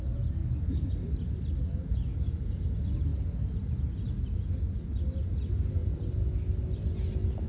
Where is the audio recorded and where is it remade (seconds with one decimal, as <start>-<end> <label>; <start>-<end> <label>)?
0.0-0.4 recorded; 0.4-0.9 remade; 0.9-2.1 recorded; 2.1-2.7 remade; 2.7-7.5 recorded

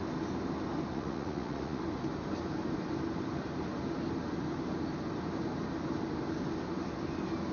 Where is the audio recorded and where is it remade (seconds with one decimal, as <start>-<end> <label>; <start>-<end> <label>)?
0.0-0.9 recorded; 0.9-1.8 remade; 1.8-7.5 recorded

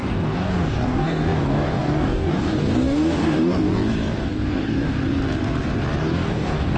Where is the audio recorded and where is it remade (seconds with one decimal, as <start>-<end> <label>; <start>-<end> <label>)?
0.0-3.7 remade; 3.7-4.2 recorded; 4.2-5.0 remade; 5.0-6.0 recorded; 6.0-6.8 remade

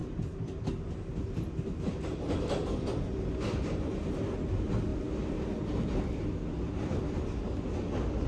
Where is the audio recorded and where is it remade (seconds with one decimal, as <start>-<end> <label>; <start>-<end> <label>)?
0.0-8.3 recorded